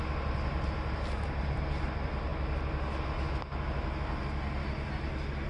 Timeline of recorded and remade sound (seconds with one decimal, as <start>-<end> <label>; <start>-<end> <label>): 0.0-5.5 recorded